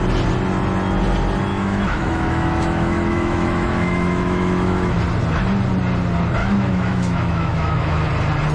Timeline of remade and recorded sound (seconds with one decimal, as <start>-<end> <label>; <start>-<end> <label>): 0.0-1.5 recorded; 1.5-5.0 remade; 5.0-6.4 recorded; 6.4-8.1 remade; 8.1-8.5 recorded